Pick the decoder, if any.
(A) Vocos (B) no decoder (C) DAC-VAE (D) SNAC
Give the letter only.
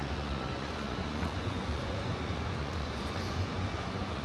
A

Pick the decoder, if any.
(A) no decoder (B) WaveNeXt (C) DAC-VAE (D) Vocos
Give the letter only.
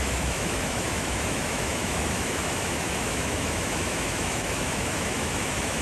C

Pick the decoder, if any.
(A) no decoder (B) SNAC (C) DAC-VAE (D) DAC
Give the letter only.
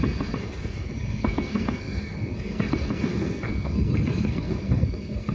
B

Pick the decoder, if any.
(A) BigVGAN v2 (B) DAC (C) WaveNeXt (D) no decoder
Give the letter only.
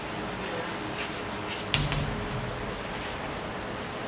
D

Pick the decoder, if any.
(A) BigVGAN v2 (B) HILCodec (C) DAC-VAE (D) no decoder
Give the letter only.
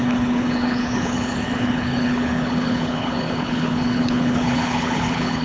B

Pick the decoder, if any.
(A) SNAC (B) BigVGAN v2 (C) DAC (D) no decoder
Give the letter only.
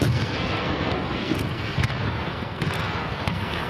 A